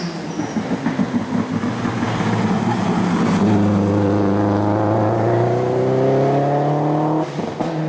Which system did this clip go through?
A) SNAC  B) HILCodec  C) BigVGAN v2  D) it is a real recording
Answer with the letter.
D